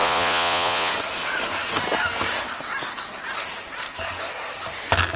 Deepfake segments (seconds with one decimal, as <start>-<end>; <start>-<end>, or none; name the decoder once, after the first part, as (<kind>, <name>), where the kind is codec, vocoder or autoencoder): 0.0-0.9 (vocoder, Vocos)